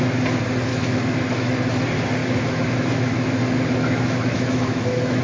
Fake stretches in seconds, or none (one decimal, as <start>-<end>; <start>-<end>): 0.7-1.7; 2.2-5.2